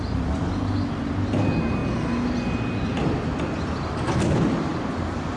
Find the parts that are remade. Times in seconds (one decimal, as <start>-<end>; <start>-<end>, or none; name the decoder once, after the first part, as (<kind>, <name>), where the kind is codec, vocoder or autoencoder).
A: 4.7-5.4 (vocoder, BigVGAN v2)